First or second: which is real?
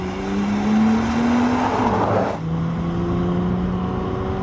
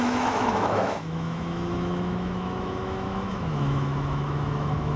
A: first